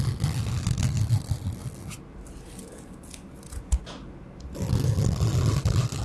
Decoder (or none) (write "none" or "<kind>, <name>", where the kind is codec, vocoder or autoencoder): none